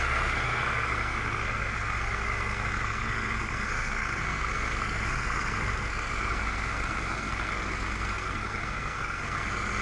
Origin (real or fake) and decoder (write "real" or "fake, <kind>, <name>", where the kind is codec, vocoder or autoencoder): fake, codec, SNAC